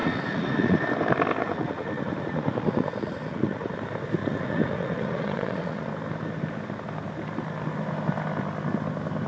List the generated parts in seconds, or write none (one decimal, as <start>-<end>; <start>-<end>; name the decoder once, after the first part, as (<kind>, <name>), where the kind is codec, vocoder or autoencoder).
0.0-0.8 (vocoder, Vocos); 1.4-3.7; 4.2-5.9